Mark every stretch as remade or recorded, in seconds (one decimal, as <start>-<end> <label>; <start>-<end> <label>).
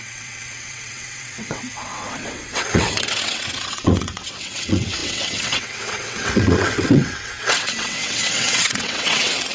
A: 0.0-9.5 remade